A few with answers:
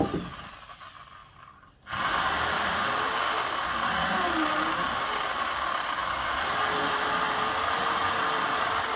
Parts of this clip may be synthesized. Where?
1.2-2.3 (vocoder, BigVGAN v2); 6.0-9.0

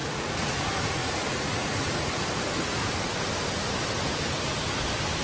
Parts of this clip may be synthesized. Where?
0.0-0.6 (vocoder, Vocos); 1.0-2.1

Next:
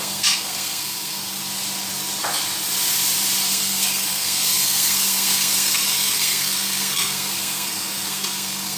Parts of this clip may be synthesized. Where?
0.0-1.4 (codec, SNAC); 3.5-8.8